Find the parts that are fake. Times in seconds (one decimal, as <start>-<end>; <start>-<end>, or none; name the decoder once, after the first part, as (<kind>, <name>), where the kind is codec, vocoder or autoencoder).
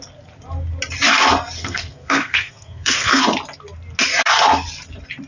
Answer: 1.6-3.2 (codec, SNAC)